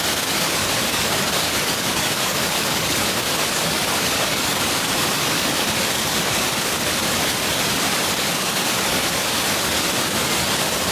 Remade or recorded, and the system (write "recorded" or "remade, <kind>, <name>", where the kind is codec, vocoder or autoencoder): remade, codec, DAC